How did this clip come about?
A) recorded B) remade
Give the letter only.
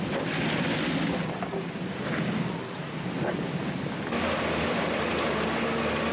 A